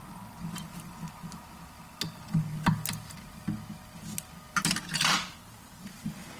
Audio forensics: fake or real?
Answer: real